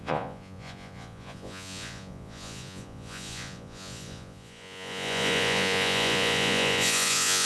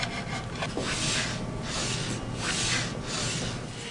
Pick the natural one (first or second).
second